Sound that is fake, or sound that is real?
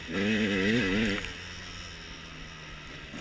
real